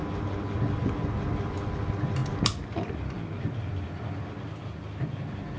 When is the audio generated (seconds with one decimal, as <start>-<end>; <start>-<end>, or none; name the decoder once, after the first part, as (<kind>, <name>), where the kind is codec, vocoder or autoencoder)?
none